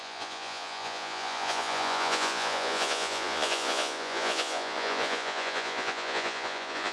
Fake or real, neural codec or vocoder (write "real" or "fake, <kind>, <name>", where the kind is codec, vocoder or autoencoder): fake, vocoder, Vocos